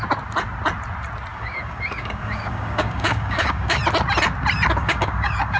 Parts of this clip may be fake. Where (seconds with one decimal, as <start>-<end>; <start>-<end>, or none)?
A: 1.3-3.8; 4.8-5.6